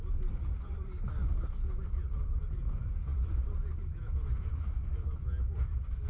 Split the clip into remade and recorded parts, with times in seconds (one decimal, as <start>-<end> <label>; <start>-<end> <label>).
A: 0.0-6.1 recorded